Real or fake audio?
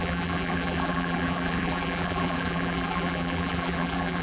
fake